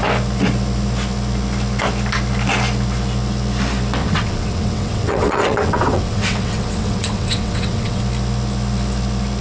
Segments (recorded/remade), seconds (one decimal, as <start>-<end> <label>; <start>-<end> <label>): 0.0-4.0 recorded; 4.0-8.0 remade; 8.0-9.4 recorded